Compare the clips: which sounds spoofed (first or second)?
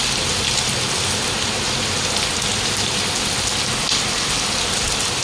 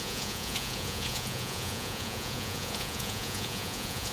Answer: second